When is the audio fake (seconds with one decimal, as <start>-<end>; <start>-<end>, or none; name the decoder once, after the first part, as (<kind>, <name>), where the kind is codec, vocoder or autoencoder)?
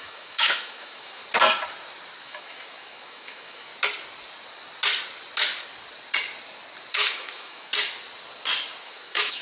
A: 0.0-1.2 (autoencoder, DAC-VAE); 2.2-3.7; 6.9-7.7; 8.8-9.4